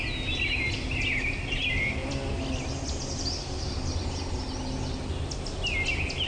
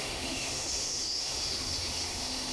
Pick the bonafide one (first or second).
first